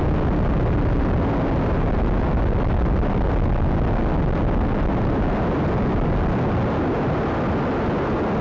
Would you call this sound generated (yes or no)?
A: no